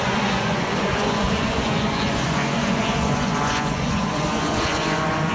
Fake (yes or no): yes